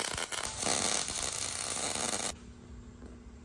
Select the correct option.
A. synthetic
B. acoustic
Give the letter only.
B